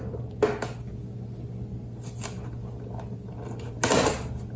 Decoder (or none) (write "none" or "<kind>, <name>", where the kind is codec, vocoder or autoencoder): none